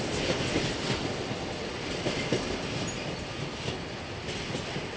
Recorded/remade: recorded